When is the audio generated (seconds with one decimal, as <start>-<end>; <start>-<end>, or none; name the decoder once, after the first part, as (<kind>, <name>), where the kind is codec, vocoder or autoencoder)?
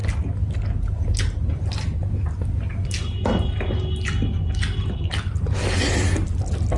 none